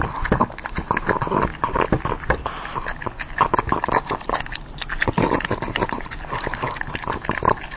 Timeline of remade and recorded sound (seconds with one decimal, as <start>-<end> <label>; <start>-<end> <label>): 0.0-7.8 recorded